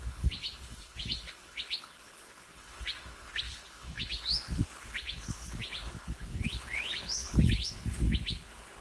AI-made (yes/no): yes